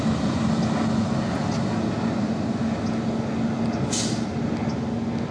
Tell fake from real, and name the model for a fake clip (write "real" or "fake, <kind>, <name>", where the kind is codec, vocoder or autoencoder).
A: real